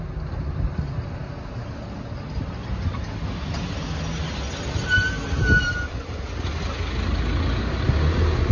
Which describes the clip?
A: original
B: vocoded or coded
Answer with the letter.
A